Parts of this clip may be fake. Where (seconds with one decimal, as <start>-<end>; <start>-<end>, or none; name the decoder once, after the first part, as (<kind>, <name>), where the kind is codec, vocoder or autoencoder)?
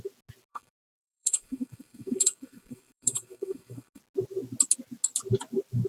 0.5-4.0 (codec, SNAC)